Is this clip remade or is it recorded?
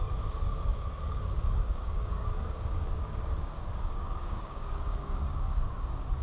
remade